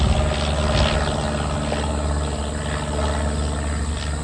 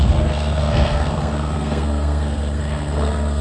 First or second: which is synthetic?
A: second